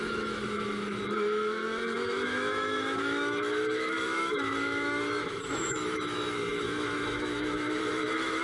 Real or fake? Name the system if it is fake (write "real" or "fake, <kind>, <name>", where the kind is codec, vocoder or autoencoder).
fake, autoencoder, DAC-VAE